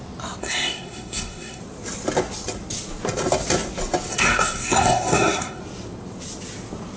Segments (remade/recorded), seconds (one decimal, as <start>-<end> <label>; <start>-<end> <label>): 0.0-0.4 recorded; 0.4-1.6 remade; 1.6-4.1 recorded; 4.1-5.6 remade; 5.6-7.0 recorded